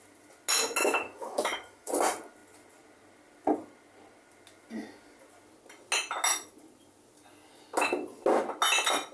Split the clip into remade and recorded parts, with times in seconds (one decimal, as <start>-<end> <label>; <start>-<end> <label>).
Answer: 0.0-0.8 recorded; 0.8-1.9 remade; 1.9-9.1 recorded